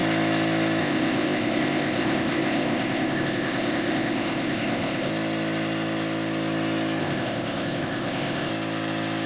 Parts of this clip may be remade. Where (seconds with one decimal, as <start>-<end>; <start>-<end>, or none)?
0.8-5.1; 7.0-8.5